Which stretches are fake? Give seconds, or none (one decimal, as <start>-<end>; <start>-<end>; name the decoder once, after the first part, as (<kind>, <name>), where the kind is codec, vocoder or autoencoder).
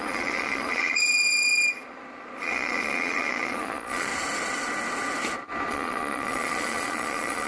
0.0-1.0 (vocoder, Vocos); 2.4-4.1; 5.7-7.5